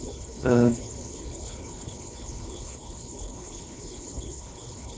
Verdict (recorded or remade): remade